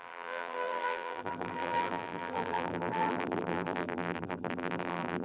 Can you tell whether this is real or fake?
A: fake